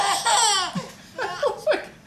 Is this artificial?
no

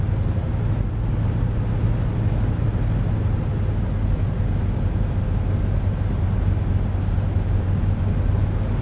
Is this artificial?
no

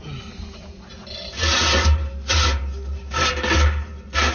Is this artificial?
no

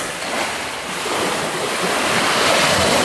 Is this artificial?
no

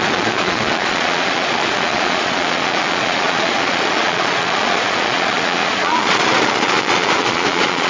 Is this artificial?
yes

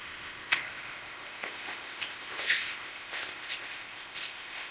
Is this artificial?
yes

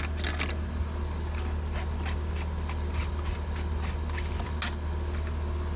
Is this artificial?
no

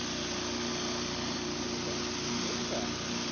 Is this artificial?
no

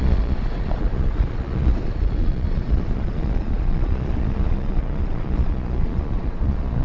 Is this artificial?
yes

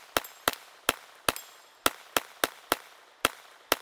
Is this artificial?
no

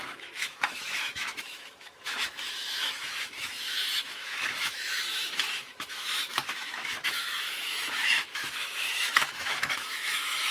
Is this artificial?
yes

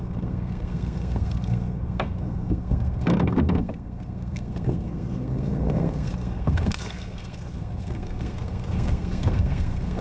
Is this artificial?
yes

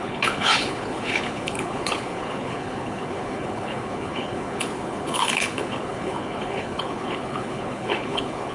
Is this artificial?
yes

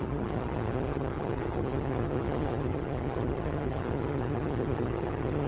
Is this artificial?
yes